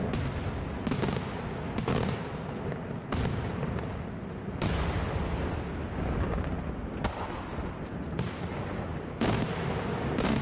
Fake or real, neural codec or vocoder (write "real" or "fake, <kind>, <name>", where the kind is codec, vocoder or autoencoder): real